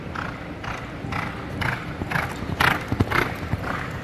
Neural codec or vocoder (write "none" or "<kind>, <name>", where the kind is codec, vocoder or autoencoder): none